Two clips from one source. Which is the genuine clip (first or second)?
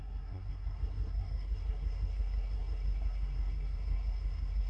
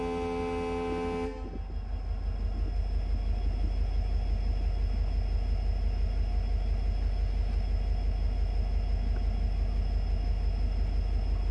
second